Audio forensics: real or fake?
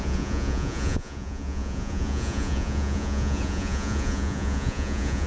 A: fake